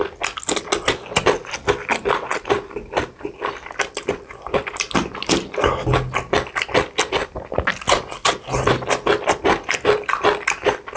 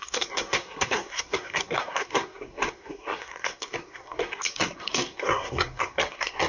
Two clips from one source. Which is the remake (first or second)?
second